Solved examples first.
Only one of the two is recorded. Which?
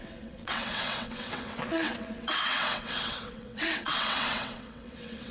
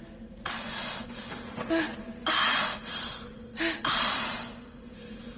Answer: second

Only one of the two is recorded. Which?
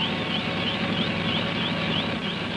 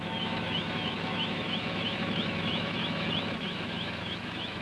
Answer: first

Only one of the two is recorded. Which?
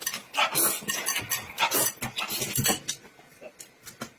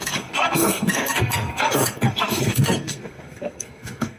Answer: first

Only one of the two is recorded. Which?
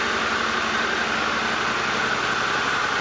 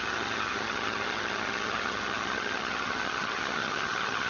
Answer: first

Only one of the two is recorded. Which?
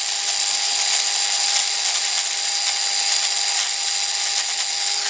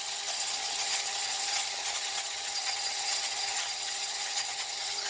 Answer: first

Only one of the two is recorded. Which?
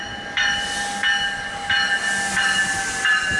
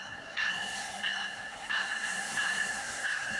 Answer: first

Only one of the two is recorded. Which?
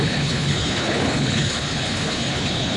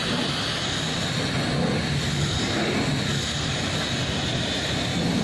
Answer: second